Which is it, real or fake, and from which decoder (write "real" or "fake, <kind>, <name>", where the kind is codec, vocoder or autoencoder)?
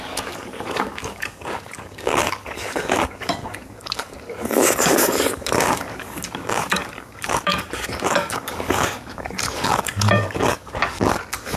fake, codec, DAC